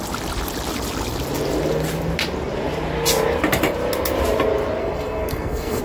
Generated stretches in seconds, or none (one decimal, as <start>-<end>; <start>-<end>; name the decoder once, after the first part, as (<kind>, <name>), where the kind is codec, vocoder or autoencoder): 4.8-5.8 (codec, SNAC)